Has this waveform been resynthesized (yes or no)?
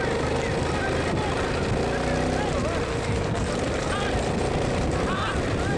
no